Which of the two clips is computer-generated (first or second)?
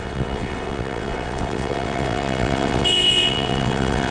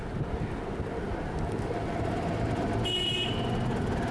first